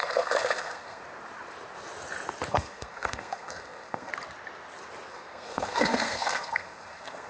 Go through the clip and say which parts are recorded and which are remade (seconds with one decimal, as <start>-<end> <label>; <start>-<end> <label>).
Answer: 0.0-1.0 remade; 1.0-2.5 recorded; 2.5-4.1 remade; 4.1-5.1 recorded; 5.1-7.3 remade